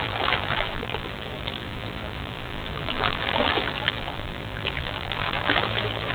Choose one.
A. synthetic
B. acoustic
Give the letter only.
A